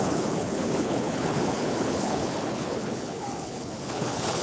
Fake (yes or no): yes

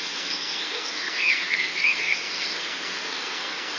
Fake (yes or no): yes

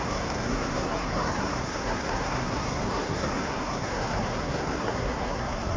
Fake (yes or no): yes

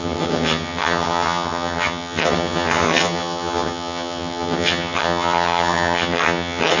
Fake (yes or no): yes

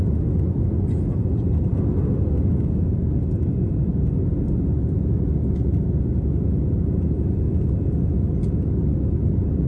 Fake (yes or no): no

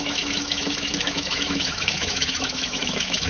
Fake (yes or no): yes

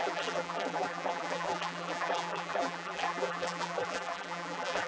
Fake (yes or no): yes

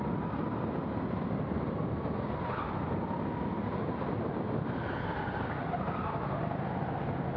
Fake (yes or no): no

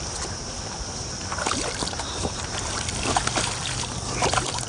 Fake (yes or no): yes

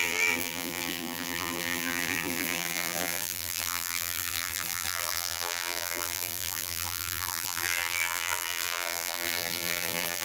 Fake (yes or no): yes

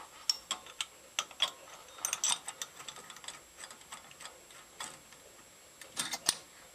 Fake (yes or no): no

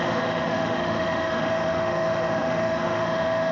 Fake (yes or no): yes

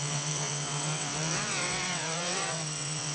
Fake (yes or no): yes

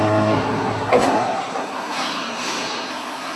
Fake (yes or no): yes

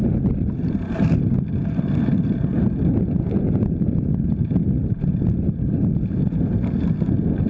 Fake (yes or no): no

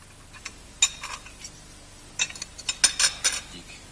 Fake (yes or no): no